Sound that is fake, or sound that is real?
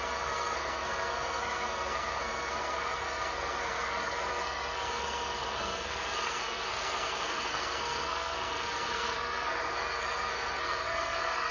fake